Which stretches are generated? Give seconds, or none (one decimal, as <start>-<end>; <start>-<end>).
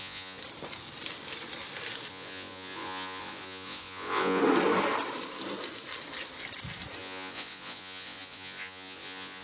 0.0-0.4; 2.1-4.4; 7.0-9.4